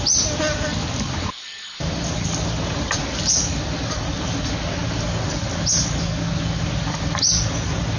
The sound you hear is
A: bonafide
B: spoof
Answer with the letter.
A